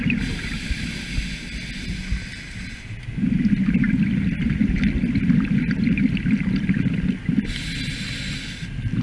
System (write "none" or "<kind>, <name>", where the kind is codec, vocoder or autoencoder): none